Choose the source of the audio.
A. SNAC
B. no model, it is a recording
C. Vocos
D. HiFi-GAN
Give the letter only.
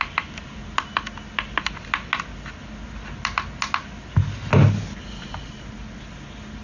B